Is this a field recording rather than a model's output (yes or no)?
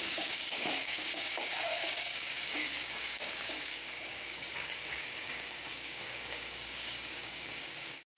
no